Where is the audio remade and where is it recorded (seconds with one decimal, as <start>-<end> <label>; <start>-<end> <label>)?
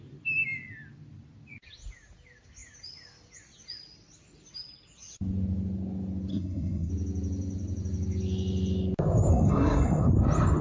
0.0-6.3 recorded; 6.3-6.9 remade; 6.9-9.3 recorded; 9.3-10.1 remade; 10.1-10.6 recorded